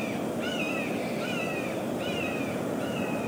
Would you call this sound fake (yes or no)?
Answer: no